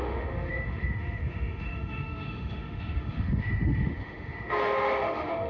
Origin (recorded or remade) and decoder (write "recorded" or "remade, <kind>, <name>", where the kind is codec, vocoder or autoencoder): remade, autoencoder, DAC-VAE